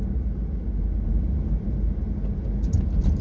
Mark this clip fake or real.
real